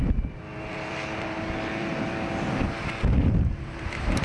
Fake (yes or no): yes